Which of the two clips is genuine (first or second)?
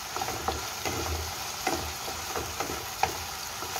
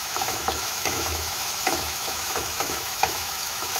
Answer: first